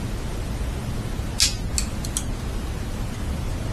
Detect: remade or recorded recorded